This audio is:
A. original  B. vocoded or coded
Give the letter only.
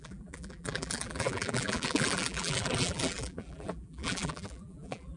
B